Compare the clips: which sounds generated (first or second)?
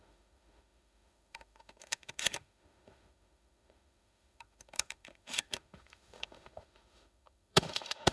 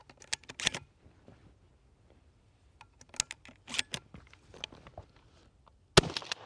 first